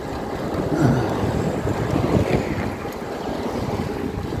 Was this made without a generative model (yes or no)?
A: yes